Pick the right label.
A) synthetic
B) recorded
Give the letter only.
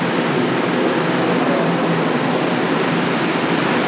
B